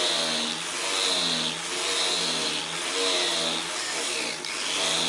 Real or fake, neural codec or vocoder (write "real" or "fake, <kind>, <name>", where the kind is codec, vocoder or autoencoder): real